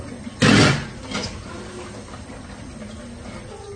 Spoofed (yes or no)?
no